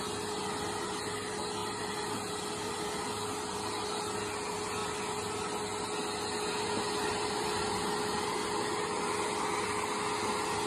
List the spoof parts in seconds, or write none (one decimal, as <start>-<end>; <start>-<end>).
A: none